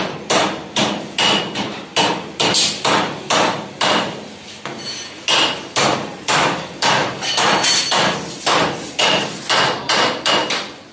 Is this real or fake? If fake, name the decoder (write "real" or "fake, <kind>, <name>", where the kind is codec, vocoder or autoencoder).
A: real